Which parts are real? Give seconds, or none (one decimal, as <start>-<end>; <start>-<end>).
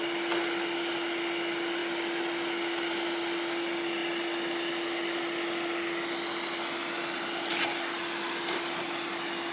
0.0-9.5